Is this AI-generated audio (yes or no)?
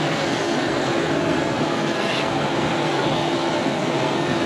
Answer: yes